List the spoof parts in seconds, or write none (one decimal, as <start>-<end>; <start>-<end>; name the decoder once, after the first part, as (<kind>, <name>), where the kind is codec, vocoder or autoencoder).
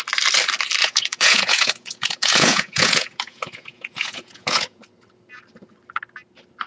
0.8-4.8 (vocoder, Vocos)